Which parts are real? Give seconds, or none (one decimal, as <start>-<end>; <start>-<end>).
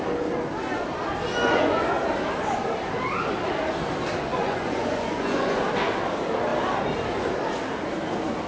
0.0-1.3; 1.9-4.3; 5.6-8.5